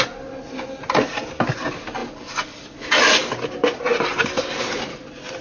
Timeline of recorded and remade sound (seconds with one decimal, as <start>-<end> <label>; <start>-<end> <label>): 0.0-5.4 recorded